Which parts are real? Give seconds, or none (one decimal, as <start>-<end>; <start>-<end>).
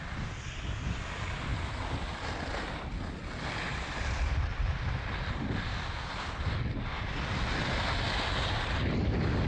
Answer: 0.0-4.5; 5.3-9.5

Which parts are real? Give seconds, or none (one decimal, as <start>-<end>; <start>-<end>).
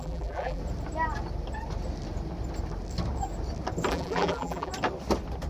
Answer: 0.6-3.9; 4.7-5.5